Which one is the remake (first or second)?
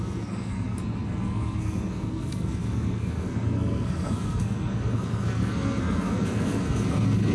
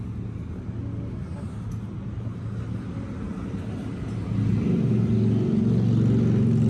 first